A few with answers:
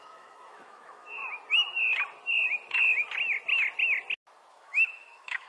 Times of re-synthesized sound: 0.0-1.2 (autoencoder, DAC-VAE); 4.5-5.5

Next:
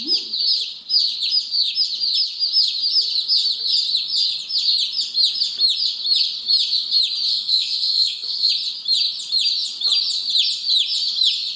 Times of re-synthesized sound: 7.3-8.5 (codec, SNAC)

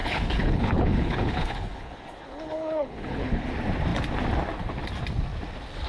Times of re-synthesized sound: 0.0-3.5 (codec, HILCodec)

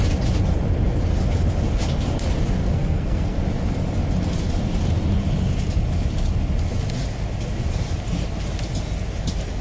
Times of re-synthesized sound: 2.6-3.4 (codec, SNAC)

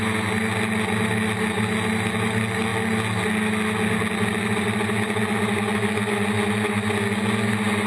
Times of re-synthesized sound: none